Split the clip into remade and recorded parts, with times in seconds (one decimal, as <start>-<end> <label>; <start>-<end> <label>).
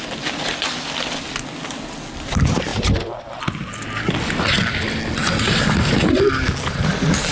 0.0-7.3 recorded